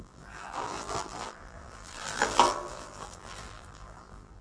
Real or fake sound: fake